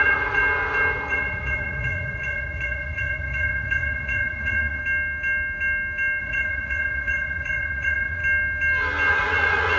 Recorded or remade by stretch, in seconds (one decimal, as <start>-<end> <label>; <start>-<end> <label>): 0.0-0.4 remade; 0.4-1.1 recorded; 1.1-4.8 remade; 4.8-6.2 recorded; 6.2-8.2 remade; 8.2-9.1 recorded; 9.1-9.8 remade